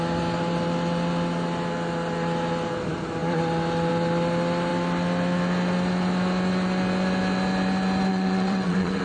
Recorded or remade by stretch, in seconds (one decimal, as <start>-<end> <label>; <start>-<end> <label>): 0.0-8.1 recorded; 8.1-9.0 remade